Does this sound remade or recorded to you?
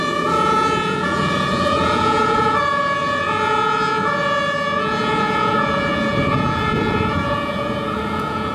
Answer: remade